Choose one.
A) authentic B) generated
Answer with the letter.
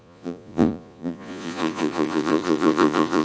B